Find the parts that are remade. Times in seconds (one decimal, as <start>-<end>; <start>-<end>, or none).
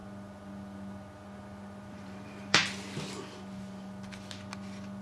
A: 1.9-2.6